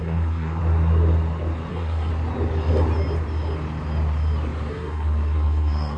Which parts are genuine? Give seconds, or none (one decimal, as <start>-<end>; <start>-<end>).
0.6-1.7; 2.1-4.7